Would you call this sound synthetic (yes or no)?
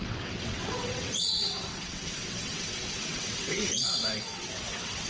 yes